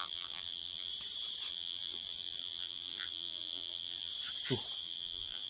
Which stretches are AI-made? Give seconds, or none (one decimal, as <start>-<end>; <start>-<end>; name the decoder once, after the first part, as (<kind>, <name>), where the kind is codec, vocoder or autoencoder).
0.0-0.9 (vocoder, BigVGAN v2); 1.5-4.1; 4.8-5.5